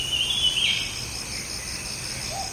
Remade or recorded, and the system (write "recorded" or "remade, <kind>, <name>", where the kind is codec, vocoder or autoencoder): recorded